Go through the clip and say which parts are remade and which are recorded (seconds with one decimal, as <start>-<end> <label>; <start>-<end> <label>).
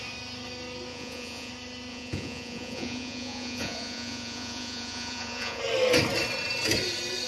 0.0-0.9 recorded; 0.9-1.5 remade; 1.5-1.9 recorded; 1.9-5.6 remade; 5.6-7.3 recorded